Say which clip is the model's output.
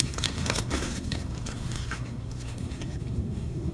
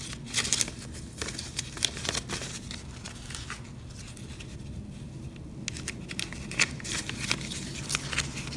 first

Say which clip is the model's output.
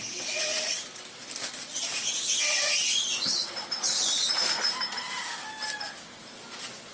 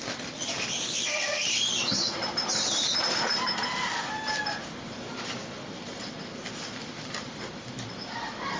second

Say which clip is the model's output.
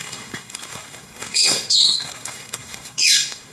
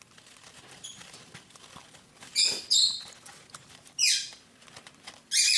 first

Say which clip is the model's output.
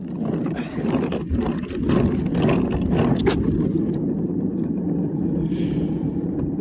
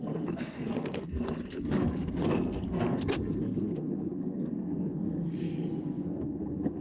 second